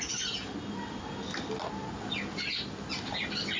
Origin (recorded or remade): recorded